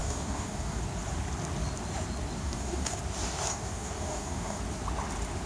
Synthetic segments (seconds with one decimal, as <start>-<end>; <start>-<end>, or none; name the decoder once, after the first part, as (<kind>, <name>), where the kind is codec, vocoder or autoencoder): 0.0-0.8 (codec, DAC); 2.4-3.0; 3.5-4.6